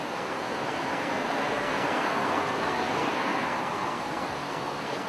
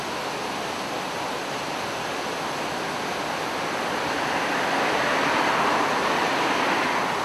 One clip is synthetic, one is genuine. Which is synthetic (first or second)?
first